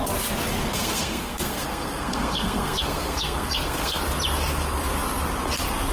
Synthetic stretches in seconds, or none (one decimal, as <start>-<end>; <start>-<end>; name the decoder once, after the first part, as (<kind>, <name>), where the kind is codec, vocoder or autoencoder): 0.7-4.0 (codec, SNAC)